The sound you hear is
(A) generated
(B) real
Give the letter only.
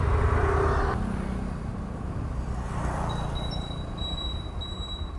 B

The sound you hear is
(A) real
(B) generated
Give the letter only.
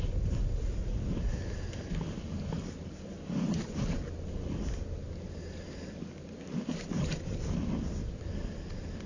A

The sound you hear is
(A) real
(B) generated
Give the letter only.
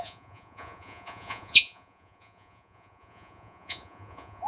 B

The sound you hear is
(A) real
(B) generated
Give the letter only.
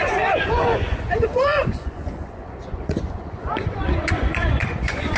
B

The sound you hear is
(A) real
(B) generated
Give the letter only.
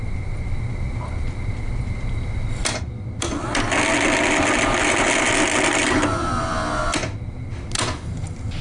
A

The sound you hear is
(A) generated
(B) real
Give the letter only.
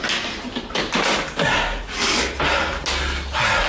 B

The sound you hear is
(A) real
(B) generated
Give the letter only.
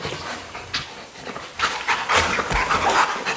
A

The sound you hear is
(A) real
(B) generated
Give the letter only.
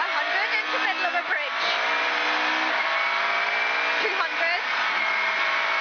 A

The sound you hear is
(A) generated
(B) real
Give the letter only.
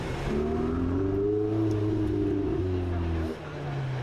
B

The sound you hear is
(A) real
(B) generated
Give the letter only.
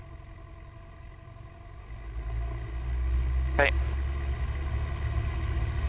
A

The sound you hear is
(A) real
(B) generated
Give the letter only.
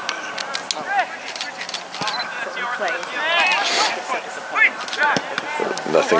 A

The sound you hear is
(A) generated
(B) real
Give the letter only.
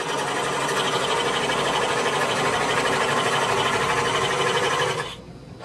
B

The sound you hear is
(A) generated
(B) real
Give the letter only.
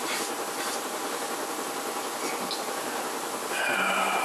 B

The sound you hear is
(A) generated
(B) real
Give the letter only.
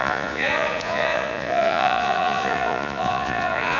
A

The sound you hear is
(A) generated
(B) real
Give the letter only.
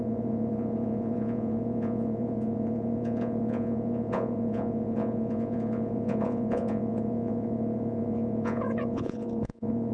A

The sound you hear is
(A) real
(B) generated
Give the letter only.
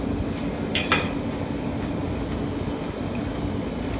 A